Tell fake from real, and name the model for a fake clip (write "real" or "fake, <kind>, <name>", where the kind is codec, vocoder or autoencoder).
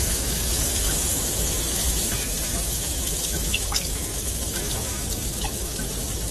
fake, autoencoder, DAC-VAE